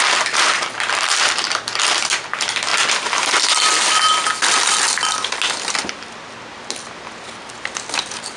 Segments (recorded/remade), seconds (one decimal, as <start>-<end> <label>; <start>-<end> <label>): 0.0-8.4 recorded